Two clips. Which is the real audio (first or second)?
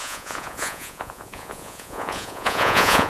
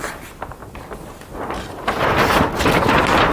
second